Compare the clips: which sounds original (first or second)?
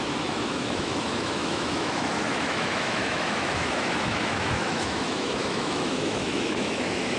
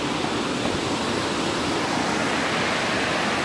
second